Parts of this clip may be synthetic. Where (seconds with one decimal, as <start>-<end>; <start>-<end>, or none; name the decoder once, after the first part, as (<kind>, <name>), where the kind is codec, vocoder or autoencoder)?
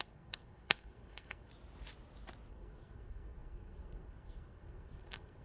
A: 0.0-1.5 (codec, SNAC); 2.5-5.4